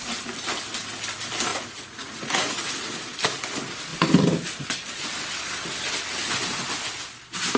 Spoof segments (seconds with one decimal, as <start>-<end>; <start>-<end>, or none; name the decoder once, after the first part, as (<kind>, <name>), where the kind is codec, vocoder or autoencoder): 1.5-3.2 (vocoder, Vocos)